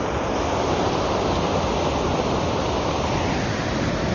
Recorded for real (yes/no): yes